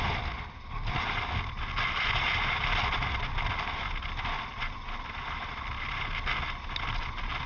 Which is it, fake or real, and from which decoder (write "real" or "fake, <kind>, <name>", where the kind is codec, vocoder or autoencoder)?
real